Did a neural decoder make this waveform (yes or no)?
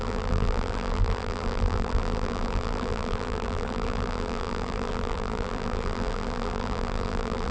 yes